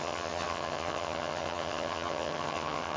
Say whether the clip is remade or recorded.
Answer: remade